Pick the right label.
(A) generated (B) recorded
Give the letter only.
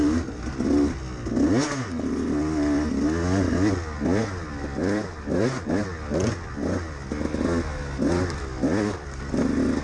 B